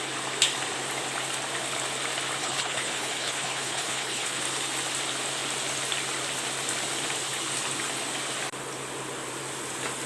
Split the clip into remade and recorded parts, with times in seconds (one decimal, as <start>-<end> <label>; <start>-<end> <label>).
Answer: 0.0-2.4 recorded; 2.4-4.4 remade; 4.4-10.1 recorded